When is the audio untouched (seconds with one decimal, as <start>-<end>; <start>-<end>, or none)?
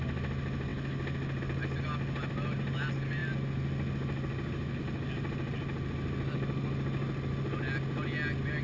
0.0-8.6